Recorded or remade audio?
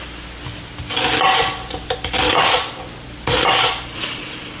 recorded